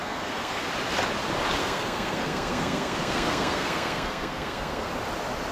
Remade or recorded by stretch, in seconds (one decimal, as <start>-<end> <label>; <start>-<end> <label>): 0.0-0.7 remade; 0.7-1.6 recorded; 1.6-4.9 remade; 4.9-5.5 recorded